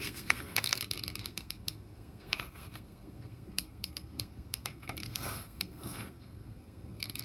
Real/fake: fake